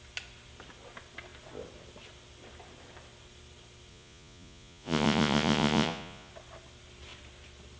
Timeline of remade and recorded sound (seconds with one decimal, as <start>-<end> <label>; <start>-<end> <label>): 0.0-3.9 recorded; 3.9-6.3 remade; 6.3-7.8 recorded